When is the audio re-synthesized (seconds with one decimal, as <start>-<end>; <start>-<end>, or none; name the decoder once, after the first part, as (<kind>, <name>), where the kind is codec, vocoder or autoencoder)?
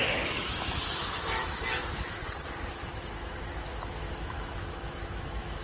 0.0-2.2 (autoencoder, DAC-VAE); 2.7-5.6